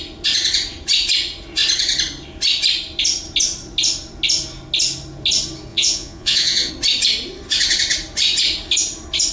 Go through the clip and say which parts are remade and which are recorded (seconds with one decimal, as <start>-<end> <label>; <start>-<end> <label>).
0.0-5.7 recorded; 5.7-6.7 remade; 6.7-9.3 recorded